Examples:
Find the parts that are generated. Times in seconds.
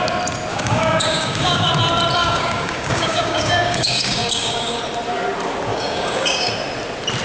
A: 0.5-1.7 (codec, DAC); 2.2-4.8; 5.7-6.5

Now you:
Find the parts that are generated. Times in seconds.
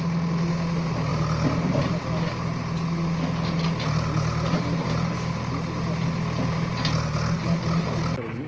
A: none